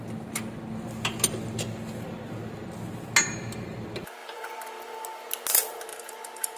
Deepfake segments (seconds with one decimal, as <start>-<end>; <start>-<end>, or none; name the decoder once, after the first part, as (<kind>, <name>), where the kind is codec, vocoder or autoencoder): 5.9-6.6 (vocoder, BigVGAN v2)